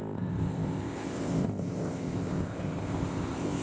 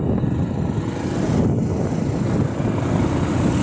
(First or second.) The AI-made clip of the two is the first